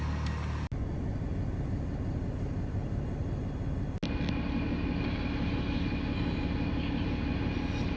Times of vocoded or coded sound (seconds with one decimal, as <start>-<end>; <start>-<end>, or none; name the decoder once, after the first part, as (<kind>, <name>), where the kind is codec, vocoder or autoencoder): 0.8-1.3 (vocoder, Vocos)